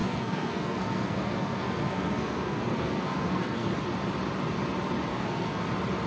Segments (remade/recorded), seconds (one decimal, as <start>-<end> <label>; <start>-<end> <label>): 0.0-3.7 remade; 3.7-5.1 recorded; 5.1-5.6 remade; 5.6-6.1 recorded